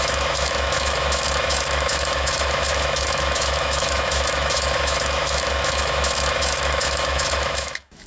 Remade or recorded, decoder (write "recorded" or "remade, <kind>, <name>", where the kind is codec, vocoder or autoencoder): remade, autoencoder, DAC-VAE